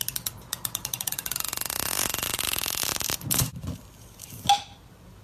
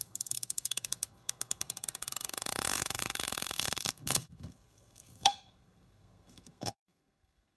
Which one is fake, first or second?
second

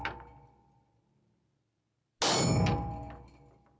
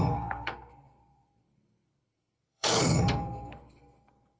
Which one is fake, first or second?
second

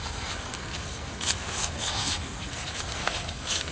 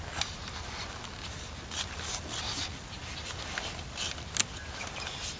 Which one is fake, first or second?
first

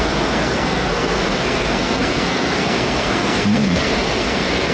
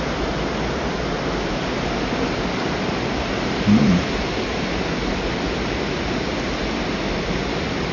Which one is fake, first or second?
first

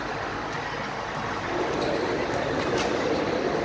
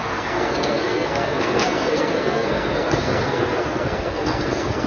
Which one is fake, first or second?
second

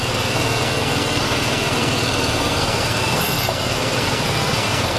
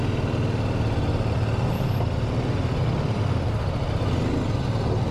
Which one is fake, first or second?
first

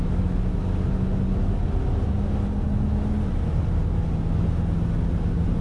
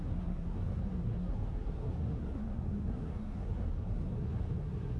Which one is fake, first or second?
second